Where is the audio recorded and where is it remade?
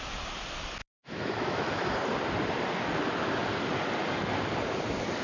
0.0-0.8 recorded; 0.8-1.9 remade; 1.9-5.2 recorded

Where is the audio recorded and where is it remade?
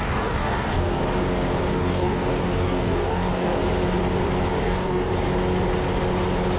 0.0-1.0 remade; 1.0-1.7 recorded; 1.7-3.6 remade; 3.6-4.5 recorded; 4.5-5.1 remade; 5.1-6.6 recorded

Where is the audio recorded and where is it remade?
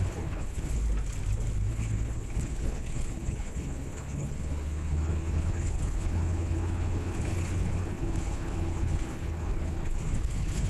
0.0-0.8 remade; 0.8-1.7 recorded; 1.7-10.7 remade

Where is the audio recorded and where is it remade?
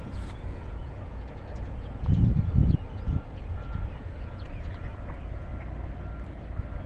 0.0-5.5 remade; 5.5-6.9 recorded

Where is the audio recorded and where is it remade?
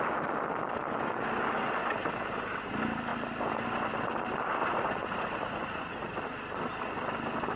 0.0-4.6 recorded; 4.6-6.1 remade; 6.1-7.6 recorded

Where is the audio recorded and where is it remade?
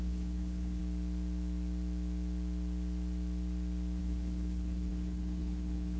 0.0-0.8 remade; 0.8-4.0 recorded; 4.0-6.0 remade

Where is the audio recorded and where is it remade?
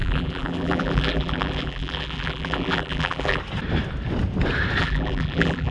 0.0-3.4 remade; 3.4-4.8 recorded; 4.8-5.7 remade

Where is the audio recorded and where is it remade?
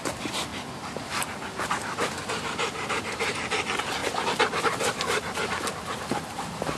0.0-6.8 recorded